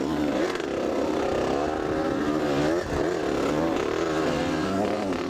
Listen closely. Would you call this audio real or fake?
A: real